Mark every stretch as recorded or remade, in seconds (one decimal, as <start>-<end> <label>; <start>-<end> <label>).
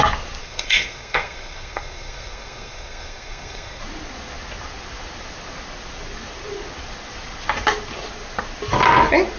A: 0.0-0.4 recorded; 0.4-3.8 remade; 3.8-9.4 recorded